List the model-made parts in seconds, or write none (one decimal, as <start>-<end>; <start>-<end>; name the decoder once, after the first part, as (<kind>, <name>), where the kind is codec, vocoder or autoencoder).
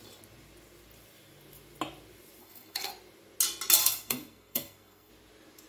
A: 2.4-2.9 (codec, SNAC); 3.8-5.1